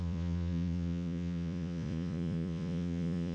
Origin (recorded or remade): remade